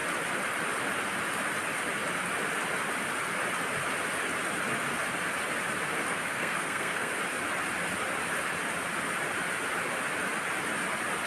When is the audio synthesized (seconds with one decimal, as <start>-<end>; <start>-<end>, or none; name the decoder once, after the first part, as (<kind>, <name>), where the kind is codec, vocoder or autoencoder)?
6.1-7.1 (codec, SNAC)